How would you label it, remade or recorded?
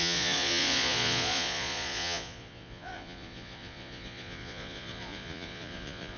remade